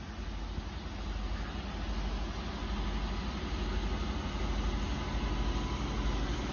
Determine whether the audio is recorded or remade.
recorded